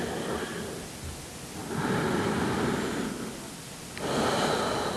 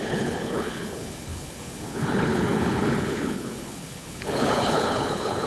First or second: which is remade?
second